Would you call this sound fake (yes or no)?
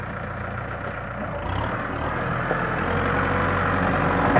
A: no